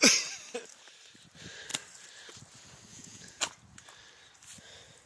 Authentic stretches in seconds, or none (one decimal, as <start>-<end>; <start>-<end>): 0.0-2.9; 3.4-5.1